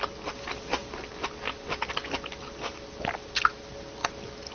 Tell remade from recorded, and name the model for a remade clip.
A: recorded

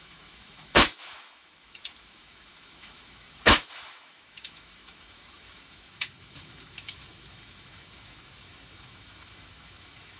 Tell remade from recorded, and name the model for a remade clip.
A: remade, autoencoder, DAC-VAE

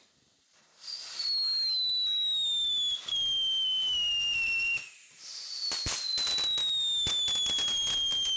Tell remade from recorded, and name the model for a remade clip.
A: recorded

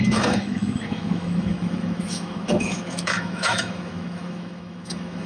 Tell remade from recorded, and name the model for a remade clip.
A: remade, autoencoder, DAC-VAE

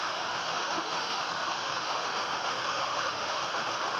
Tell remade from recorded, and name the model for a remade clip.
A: remade, autoencoder, DAC-VAE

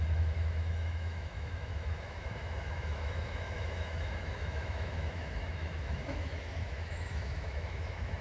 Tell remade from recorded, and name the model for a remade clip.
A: remade, autoencoder, DAC-VAE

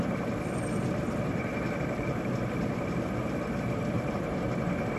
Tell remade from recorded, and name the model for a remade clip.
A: recorded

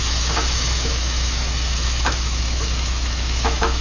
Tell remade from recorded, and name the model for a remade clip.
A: remade, autoencoder, DAC-VAE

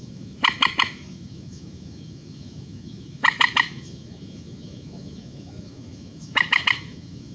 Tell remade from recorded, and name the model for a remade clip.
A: remade, autoencoder, DAC-VAE